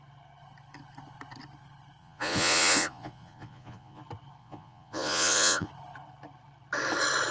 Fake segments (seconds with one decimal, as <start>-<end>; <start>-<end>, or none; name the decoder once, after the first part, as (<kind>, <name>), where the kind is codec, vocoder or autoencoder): 2.0-4.0 (vocoder, Vocos); 4.4-5.7